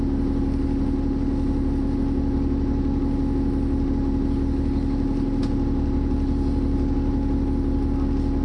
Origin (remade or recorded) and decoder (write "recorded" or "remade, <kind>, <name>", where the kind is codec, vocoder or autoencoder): recorded